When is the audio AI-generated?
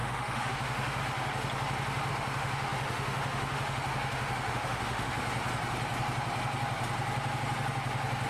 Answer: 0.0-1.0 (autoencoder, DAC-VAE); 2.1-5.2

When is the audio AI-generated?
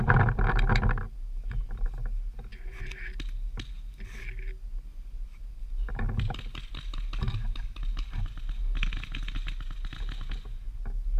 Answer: none